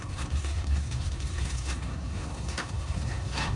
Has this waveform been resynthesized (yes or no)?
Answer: yes